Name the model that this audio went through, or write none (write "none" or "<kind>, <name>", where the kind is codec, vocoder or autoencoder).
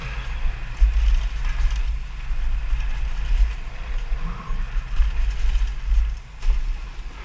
none